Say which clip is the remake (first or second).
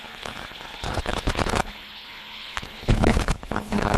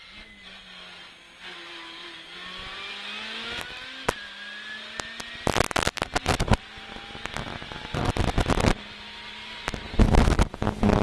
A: first